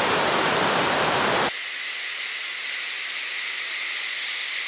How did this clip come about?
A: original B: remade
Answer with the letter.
A